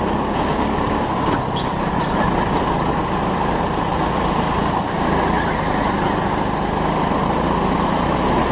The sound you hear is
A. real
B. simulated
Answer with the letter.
A